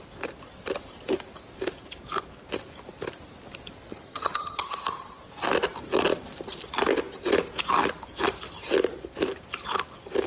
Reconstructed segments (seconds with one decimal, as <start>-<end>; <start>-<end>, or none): 3.9-4.6